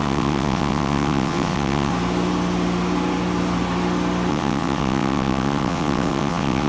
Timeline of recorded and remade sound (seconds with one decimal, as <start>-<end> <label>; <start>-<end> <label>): 0.0-1.9 remade; 1.9-4.3 recorded; 4.3-6.7 remade